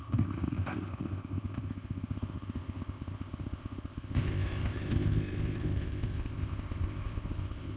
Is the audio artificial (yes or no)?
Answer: yes